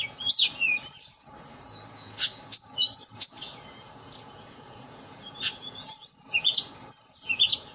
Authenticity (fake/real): fake